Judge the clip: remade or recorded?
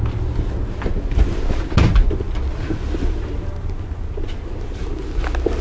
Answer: recorded